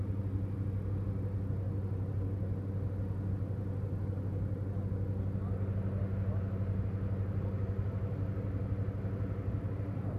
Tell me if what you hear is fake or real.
real